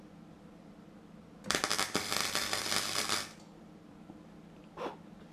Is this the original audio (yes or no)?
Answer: yes